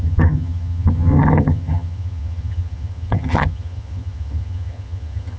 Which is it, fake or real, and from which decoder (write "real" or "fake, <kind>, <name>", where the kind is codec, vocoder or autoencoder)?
fake, vocoder, HiFi-GAN